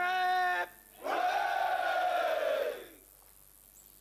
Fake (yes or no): no